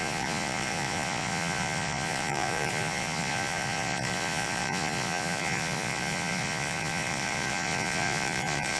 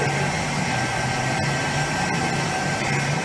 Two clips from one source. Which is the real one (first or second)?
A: second